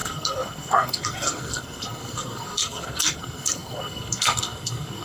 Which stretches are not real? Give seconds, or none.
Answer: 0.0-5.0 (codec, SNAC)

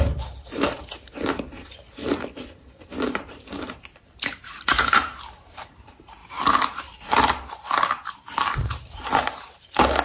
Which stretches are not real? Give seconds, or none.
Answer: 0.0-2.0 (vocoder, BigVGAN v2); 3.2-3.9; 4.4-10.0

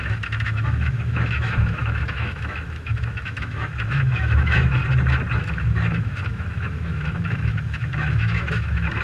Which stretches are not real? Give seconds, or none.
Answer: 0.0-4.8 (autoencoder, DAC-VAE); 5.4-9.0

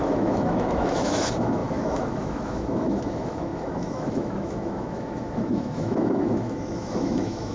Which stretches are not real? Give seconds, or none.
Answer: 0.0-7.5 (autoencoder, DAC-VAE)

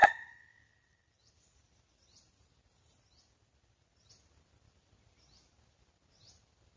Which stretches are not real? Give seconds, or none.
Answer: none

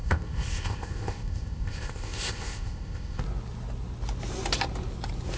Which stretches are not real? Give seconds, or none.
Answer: 0.0-3.2 (codec, ZipCodec)